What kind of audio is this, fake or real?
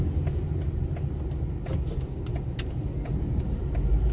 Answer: real